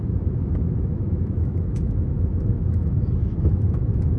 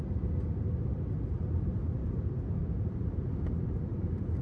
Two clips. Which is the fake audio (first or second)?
first